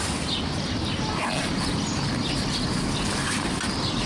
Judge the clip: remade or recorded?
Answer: recorded